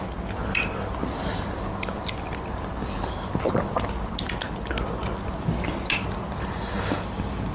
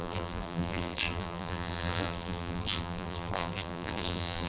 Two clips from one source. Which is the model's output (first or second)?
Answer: second